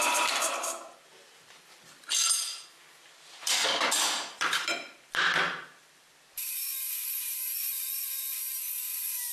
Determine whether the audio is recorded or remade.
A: remade